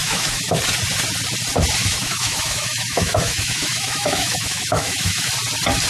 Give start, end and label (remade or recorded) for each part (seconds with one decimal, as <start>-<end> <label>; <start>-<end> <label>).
0.0-0.6 remade; 0.6-1.8 recorded; 1.8-5.3 remade; 5.3-5.9 recorded